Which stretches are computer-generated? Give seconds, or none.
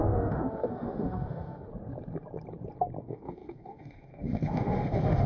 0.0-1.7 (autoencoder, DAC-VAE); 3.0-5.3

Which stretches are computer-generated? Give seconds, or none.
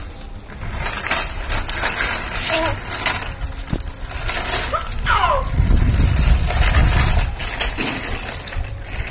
none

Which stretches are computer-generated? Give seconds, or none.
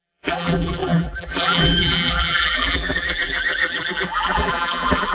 0.0-5.1 (vocoder, BigVGAN v2)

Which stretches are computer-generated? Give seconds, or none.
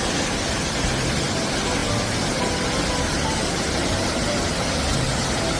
none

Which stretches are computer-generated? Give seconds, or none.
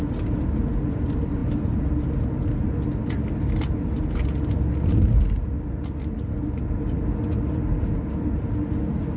none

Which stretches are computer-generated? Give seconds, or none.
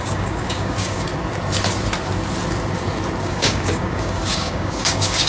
0.0-1.1 (codec, DAC); 3.2-5.3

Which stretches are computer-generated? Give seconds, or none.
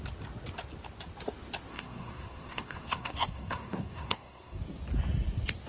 1.7-4.6 (codec, SNAC)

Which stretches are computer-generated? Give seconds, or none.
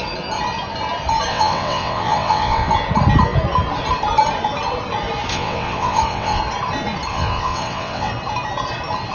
1.3-2.7 (vocoder, WaveNeXt); 5.3-6.4; 7.1-8.1